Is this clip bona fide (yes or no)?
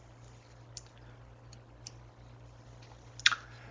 yes